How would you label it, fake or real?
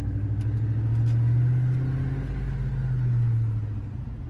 real